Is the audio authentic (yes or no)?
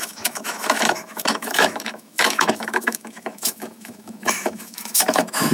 no